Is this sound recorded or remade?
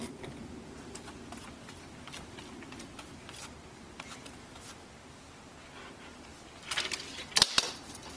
remade